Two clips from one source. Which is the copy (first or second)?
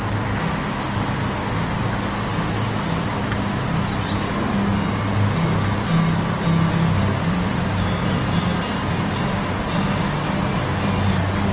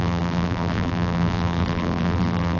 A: second